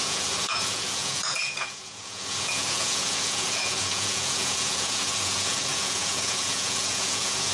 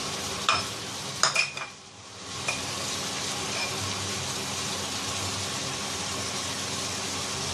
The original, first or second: second